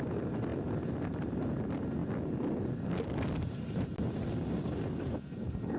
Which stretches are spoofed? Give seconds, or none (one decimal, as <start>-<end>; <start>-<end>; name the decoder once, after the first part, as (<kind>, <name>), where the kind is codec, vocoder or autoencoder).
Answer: none